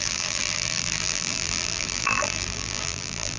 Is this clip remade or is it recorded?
remade